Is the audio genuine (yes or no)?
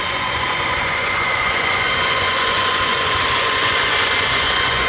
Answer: no